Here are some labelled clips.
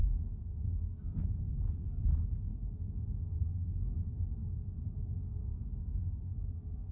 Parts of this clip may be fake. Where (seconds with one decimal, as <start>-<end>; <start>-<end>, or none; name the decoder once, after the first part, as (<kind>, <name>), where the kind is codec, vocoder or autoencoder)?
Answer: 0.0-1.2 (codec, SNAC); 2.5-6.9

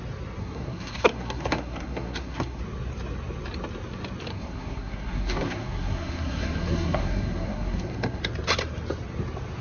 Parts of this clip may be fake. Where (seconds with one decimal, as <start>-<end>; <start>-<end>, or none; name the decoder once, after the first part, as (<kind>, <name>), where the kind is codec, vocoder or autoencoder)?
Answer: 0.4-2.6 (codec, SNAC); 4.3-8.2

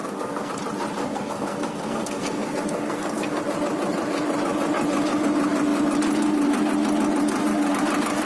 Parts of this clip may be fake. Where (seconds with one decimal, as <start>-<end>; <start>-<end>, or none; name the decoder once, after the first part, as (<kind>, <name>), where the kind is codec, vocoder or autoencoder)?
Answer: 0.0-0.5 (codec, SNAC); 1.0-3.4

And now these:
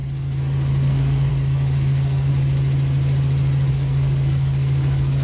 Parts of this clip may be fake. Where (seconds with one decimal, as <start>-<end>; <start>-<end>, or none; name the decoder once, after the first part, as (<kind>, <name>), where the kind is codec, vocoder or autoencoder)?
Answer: 0.0-2.3 (codec, SNAC); 3.7-5.2

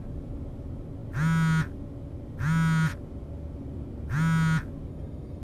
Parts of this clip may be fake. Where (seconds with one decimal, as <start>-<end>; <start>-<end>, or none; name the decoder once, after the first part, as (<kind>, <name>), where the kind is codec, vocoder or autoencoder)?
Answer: 4.9-5.4 (codec, SNAC)